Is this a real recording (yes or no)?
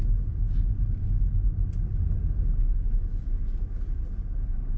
yes